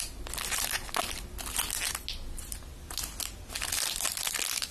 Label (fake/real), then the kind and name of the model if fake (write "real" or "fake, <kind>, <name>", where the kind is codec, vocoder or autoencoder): real